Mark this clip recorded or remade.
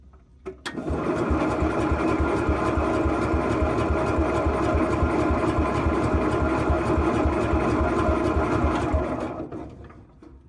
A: recorded